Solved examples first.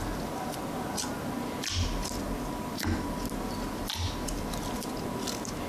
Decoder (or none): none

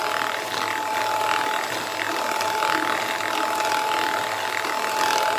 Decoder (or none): none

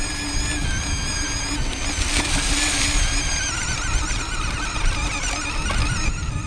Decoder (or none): none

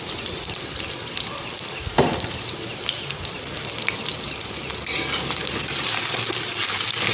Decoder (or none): vocoder, BigVGAN v2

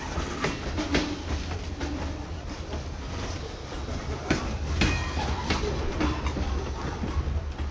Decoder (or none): none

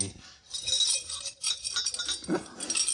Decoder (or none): none